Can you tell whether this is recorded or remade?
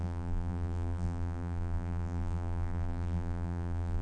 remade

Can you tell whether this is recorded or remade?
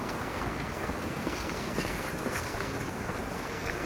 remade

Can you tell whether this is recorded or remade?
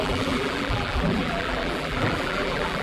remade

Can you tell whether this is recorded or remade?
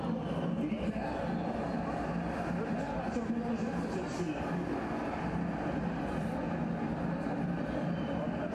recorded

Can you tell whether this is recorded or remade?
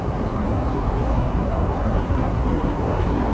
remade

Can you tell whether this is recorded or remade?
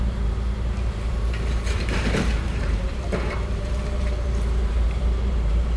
remade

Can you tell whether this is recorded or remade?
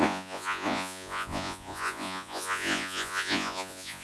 remade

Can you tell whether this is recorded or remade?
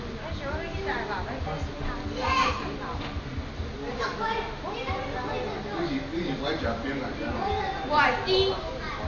recorded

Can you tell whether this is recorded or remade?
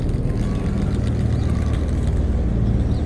recorded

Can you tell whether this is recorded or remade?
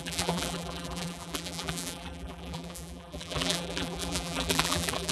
remade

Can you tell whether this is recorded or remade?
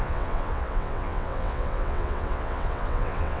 remade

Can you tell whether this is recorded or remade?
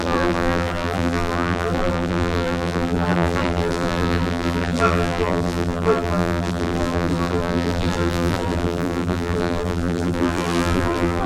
remade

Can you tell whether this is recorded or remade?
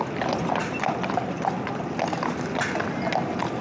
recorded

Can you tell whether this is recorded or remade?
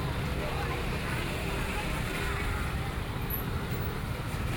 remade